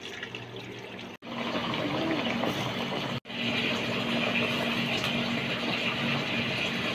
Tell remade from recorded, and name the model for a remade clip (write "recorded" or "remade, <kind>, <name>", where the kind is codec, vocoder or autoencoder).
recorded